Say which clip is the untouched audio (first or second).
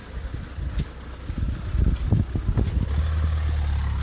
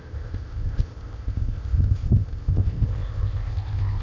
first